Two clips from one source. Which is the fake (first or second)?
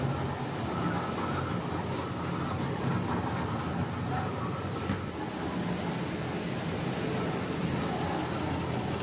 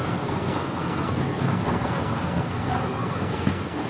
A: second